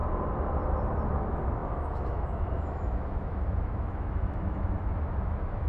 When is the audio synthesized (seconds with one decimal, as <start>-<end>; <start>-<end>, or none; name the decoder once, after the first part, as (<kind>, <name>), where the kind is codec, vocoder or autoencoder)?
1.1-5.7 (autoencoder, DAC-VAE)